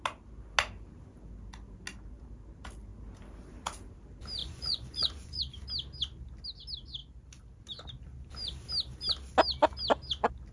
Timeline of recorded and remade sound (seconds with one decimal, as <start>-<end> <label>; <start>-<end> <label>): 0.0-4.4 recorded; 4.4-5.4 remade; 5.4-10.5 recorded